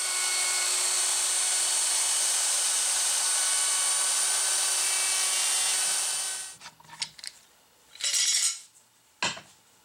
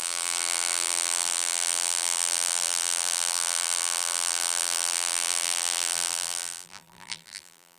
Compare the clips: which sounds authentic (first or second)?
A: first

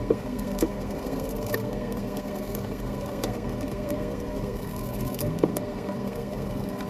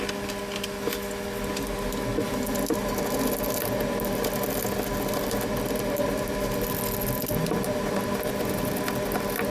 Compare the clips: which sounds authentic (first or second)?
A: second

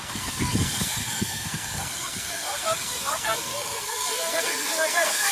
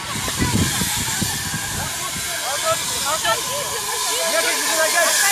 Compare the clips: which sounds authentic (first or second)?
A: second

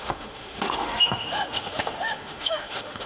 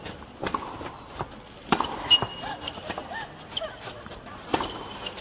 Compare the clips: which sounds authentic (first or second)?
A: second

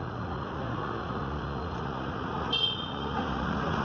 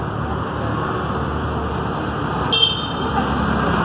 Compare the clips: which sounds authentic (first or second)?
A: second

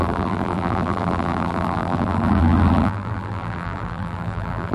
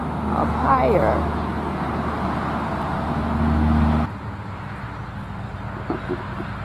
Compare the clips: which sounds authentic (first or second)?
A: second